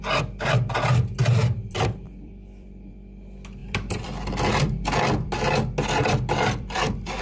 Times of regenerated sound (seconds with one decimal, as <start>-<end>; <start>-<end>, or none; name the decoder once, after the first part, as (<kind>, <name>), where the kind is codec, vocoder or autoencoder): 1.2-2.9 (vocoder, BigVGAN v2); 3.6-5.3; 6.0-7.2